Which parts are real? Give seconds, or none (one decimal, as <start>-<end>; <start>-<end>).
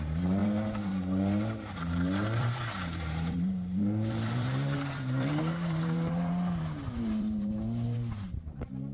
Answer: none